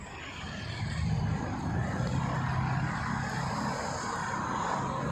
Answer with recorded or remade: recorded